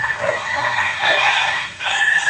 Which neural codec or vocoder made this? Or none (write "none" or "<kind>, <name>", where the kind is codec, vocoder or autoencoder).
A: codec, SNAC